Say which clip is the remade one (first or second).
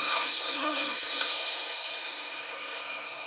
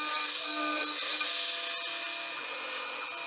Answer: first